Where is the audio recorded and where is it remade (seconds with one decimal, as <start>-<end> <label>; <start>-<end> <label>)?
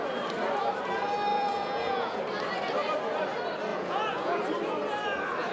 0.0-1.3 recorded; 1.3-2.2 remade; 2.2-3.7 recorded; 3.7-4.4 remade; 4.4-5.5 recorded